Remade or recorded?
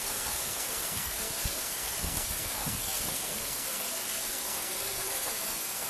remade